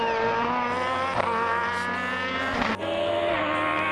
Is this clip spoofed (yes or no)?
no